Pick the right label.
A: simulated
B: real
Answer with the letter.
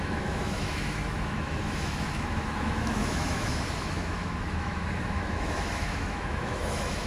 A